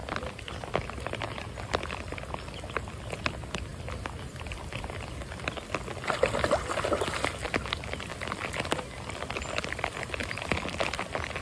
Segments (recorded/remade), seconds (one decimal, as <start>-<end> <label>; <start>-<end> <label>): 0.0-0.5 remade; 0.5-3.7 recorded; 3.7-5.1 remade; 5.1-8.1 recorded; 8.1-9.2 remade; 9.2-11.4 recorded